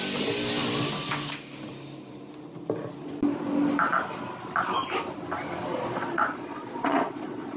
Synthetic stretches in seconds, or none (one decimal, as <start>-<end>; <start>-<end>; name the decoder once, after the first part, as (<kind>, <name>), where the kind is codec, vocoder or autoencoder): 5.7-7.6 (vocoder, Vocos)